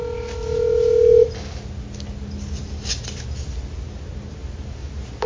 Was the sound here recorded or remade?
recorded